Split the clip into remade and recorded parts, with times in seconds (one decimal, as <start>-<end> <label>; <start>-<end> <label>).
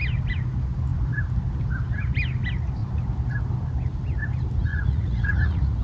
0.0-4.7 recorded; 4.7-5.8 remade